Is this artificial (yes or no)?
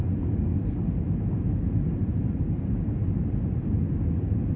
no